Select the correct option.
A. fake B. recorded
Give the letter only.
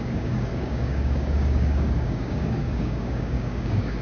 A